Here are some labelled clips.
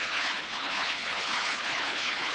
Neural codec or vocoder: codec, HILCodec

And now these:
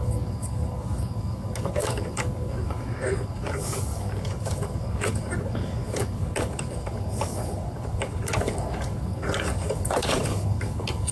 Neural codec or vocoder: codec, DAC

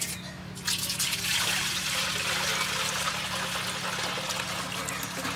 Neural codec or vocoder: none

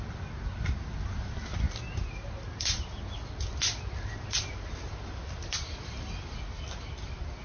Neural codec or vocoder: none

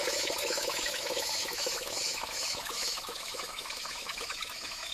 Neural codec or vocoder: autoencoder, DAC-VAE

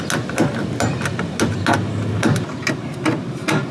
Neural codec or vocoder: none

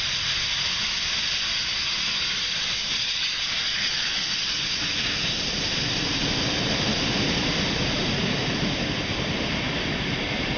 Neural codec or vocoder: none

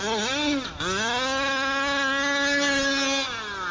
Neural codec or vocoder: none